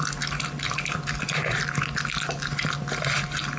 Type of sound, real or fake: real